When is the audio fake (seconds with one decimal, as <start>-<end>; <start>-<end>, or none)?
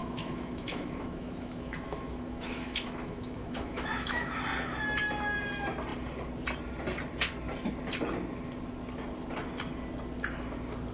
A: 0.0-4.4